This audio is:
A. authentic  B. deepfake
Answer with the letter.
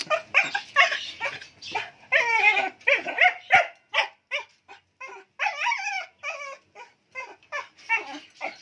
A